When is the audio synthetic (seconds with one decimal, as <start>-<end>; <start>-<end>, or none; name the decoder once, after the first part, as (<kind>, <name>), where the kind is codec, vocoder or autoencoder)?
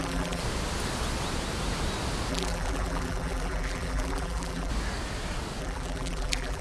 0.0-0.4 (vocoder, BigVGAN v2); 2.3-4.7; 5.6-6.6